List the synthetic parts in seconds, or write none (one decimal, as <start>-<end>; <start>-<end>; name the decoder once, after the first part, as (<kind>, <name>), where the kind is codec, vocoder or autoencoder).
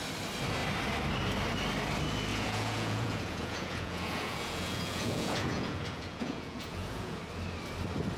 2.3-7.2 (vocoder, Vocos)